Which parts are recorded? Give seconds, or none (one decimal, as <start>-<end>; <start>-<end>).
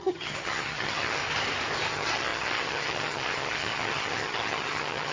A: 1.2-1.9